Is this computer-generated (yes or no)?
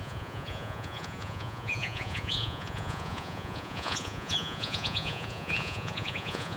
yes